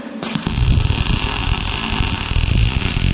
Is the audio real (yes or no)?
yes